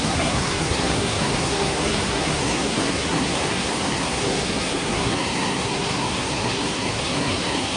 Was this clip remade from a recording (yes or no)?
yes